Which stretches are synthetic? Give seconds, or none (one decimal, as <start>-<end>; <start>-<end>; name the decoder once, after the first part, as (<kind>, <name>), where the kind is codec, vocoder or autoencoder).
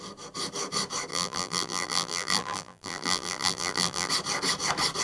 1.1-4.1 (vocoder, BigVGAN v2)